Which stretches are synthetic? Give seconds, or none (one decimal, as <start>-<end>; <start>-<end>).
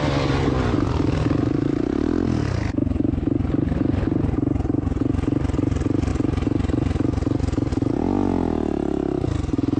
none